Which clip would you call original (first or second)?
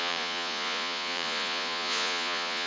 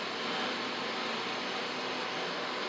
second